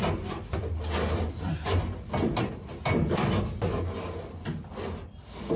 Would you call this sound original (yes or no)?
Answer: yes